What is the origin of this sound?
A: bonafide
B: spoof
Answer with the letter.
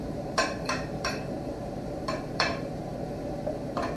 B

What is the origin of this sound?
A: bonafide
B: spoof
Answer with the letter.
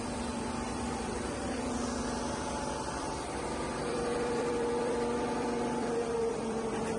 B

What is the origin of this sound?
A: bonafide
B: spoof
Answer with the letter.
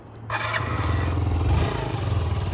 A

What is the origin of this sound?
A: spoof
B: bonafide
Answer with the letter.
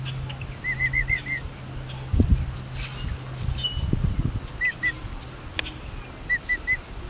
B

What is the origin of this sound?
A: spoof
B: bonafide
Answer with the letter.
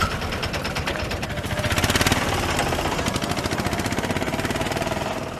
A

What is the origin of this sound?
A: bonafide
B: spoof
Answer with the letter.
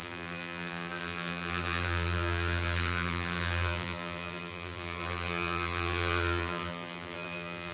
B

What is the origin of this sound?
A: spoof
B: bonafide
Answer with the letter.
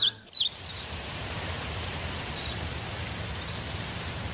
A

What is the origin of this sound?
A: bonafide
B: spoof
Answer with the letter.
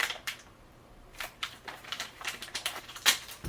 B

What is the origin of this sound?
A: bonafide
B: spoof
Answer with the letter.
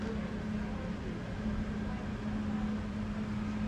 A